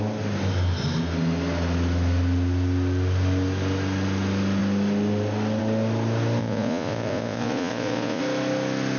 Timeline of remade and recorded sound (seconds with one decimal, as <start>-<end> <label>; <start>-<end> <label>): 0.0-6.4 recorded; 6.4-8.2 remade; 8.2-9.0 recorded